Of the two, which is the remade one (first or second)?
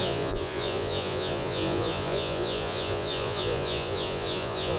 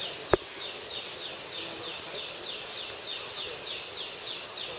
first